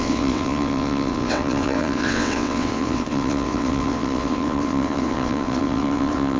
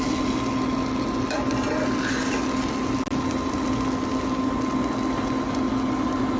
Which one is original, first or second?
second